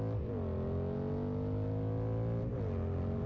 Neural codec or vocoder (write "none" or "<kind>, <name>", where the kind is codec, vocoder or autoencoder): none